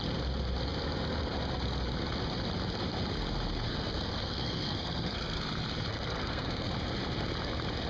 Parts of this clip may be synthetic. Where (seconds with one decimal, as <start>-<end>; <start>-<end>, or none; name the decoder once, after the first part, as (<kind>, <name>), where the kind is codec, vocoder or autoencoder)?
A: 3.7-5.4 (codec, SNAC); 5.9-6.7